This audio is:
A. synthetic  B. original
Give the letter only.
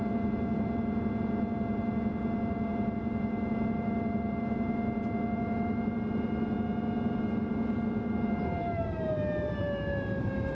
A